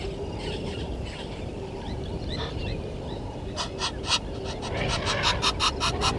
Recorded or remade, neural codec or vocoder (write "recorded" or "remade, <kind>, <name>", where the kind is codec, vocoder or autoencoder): recorded